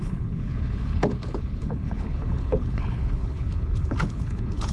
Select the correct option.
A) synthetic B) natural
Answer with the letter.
A